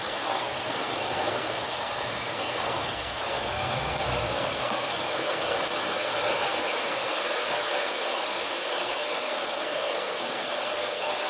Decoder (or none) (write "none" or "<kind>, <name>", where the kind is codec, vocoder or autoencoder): codec, SNAC